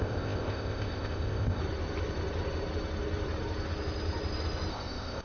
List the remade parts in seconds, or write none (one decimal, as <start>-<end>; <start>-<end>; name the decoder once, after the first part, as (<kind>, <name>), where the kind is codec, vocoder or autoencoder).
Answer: 0.0-1.6 (codec, ZipCodec); 4.7-5.2